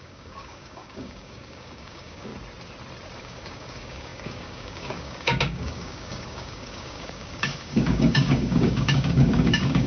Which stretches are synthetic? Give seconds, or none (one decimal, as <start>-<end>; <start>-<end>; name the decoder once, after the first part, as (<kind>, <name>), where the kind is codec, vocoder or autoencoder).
0.0-2.3 (codec, DAC); 3.2-9.9